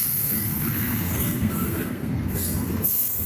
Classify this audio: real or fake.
fake